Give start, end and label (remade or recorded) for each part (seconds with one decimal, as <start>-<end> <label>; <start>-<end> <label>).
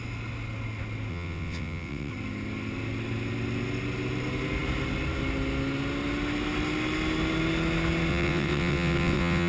0.0-1.1 recorded; 1.1-2.1 remade; 2.1-8.1 recorded; 8.1-9.5 remade